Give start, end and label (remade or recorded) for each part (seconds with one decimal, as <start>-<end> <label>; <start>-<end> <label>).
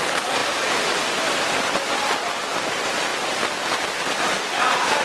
0.0-5.0 recorded